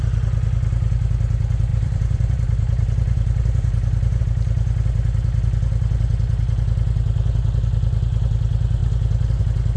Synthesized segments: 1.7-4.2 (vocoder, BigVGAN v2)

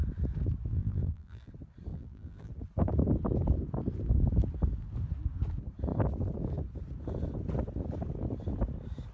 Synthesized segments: 0.7-1.5 (vocoder, BigVGAN v2); 1.9-2.5

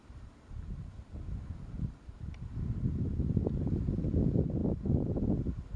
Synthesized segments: 0.0-3.5 (vocoder, BigVGAN v2)

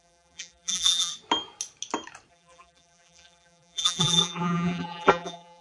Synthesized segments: 0.0-1.1 (vocoder, BigVGAN v2); 2.3-5.6

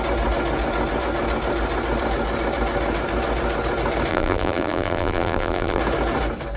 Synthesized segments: 4.1-5.8 (vocoder, BigVGAN v2)